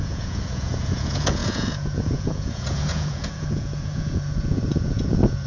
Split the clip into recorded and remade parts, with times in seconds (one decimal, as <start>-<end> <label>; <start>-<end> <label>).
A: 0.0-5.5 remade

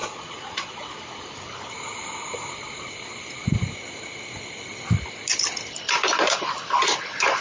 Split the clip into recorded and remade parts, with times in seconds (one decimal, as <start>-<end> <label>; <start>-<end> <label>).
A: 0.0-0.8 remade; 0.8-7.4 recorded

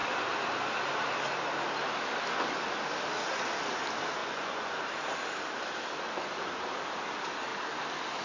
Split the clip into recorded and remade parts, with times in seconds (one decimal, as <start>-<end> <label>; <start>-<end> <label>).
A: 0.0-4.2 recorded; 4.2-4.8 remade; 4.8-8.2 recorded

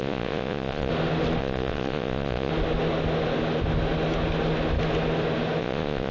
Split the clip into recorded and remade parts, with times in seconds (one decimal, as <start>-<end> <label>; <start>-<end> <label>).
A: 0.0-0.9 remade; 0.9-1.4 recorded; 1.4-2.5 remade; 2.5-5.6 recorded; 5.6-6.1 remade

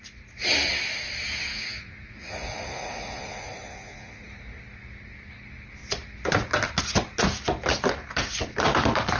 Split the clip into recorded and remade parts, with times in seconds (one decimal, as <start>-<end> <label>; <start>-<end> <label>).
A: 0.0-1.5 recorded; 1.5-4.2 remade; 4.2-9.2 recorded

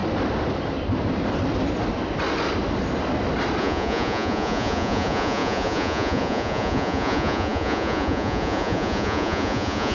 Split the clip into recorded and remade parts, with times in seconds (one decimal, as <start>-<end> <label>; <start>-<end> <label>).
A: 0.0-3.6 recorded; 3.6-9.9 remade